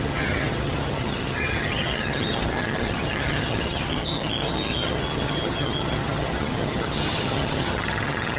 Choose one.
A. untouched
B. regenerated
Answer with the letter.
B